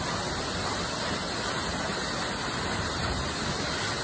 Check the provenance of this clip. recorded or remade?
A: recorded